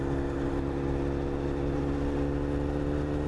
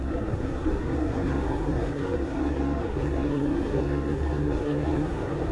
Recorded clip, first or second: first